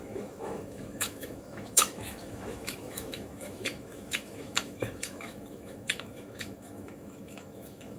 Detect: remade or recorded remade